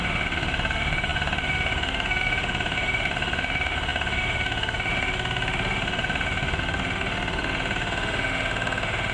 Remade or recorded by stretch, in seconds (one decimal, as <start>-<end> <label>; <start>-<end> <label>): 0.0-9.1 remade